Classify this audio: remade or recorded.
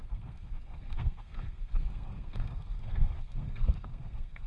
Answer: remade